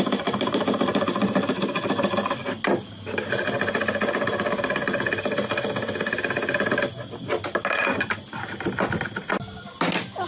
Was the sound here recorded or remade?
recorded